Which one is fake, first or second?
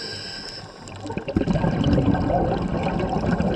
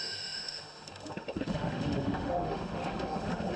second